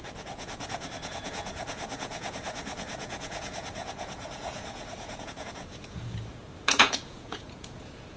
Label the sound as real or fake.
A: fake